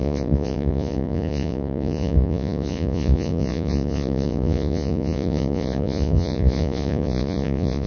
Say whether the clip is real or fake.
fake